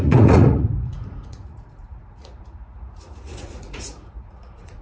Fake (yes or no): yes